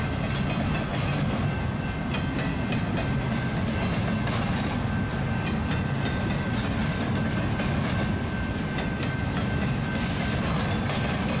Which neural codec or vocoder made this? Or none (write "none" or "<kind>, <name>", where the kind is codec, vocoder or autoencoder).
none